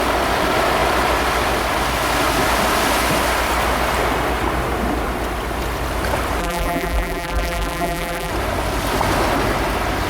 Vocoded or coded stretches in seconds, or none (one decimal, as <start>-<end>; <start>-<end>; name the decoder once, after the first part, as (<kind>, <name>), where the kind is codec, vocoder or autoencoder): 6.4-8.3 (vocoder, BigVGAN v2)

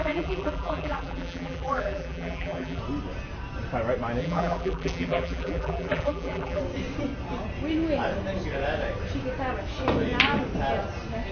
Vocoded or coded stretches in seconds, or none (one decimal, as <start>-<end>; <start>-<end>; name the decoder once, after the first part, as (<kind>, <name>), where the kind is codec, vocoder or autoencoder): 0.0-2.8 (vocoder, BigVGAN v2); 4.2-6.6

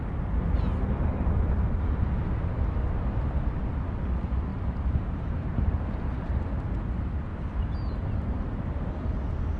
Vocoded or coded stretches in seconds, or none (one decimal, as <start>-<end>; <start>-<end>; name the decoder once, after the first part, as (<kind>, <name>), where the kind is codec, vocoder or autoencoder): 4.5-5.9 (vocoder, BigVGAN v2)

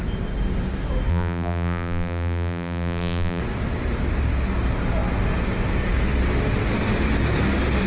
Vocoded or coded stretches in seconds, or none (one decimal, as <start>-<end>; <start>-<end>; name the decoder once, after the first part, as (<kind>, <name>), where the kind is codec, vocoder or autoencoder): 1.1-3.4 (vocoder, BigVGAN v2)

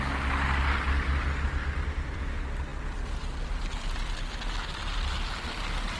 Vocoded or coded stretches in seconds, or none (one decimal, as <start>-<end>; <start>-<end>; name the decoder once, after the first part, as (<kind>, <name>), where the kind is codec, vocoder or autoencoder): 1.6-2.2 (vocoder, BigVGAN v2)

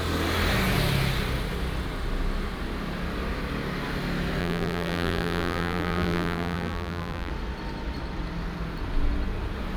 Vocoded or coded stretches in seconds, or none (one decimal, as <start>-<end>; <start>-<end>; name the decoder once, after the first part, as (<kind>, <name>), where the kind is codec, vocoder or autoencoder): 4.4-7.3 (vocoder, BigVGAN v2)